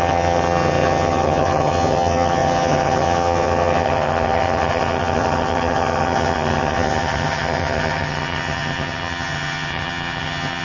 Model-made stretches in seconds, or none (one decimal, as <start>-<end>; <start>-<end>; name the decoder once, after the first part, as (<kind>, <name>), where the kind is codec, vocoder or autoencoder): 0.0-10.6 (vocoder, HiFi-GAN)